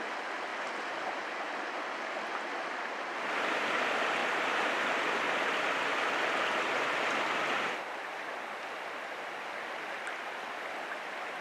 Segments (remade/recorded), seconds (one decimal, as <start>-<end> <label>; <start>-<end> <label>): 0.0-0.5 recorded; 0.5-1.2 remade; 1.2-11.4 recorded